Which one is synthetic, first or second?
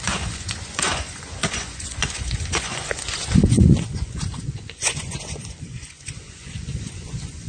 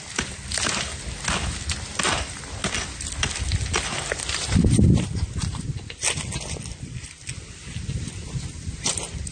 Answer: first